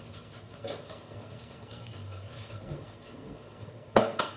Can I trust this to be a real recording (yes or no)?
no